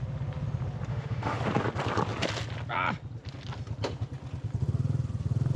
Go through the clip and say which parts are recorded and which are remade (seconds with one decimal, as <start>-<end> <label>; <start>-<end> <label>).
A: 0.0-0.9 recorded; 0.9-1.4 remade; 1.4-5.6 recorded